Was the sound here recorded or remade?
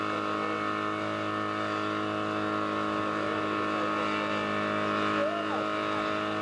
recorded